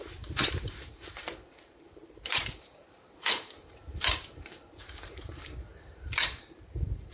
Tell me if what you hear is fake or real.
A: fake